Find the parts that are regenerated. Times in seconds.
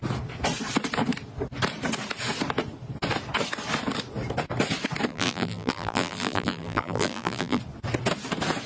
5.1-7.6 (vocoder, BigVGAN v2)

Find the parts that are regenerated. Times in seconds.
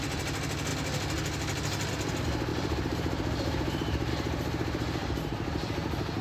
2.5-4.1 (vocoder, BigVGAN v2); 5.0-5.7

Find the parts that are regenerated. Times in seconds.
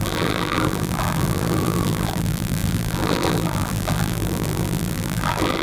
0.0-5.6 (vocoder, BigVGAN v2)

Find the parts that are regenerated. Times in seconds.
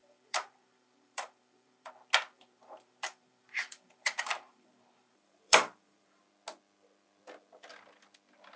0.0-1.9 (vocoder, BigVGAN v2); 2.3-6.2